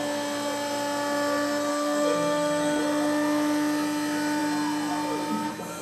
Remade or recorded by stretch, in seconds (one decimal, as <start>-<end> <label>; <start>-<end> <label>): 0.0-1.7 recorded; 1.7-2.8 remade; 2.8-5.8 recorded